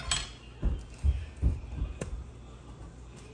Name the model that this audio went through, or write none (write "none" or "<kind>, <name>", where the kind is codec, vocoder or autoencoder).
none